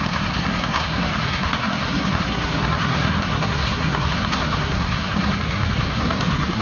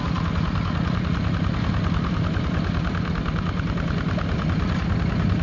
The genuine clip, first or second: second